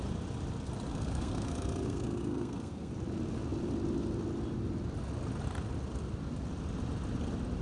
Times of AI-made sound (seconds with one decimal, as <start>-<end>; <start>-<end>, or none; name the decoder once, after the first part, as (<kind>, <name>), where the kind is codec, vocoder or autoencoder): 0.9-2.9 (codec, SNAC)